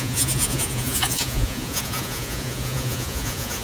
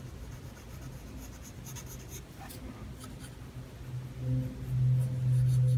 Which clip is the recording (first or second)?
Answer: second